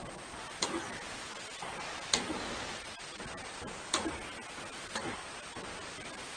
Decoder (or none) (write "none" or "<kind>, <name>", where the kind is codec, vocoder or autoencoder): none